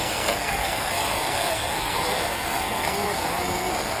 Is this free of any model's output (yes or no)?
no